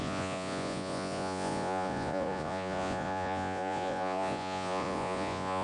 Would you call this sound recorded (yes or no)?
no